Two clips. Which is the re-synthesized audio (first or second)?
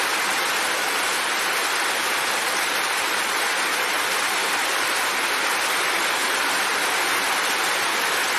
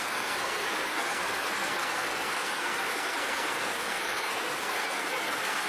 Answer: second